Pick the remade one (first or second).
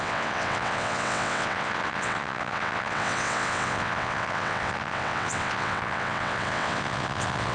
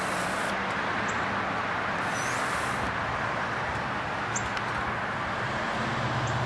first